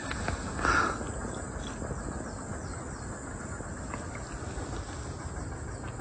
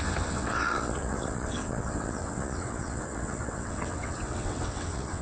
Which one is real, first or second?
first